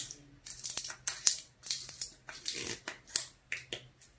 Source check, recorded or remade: recorded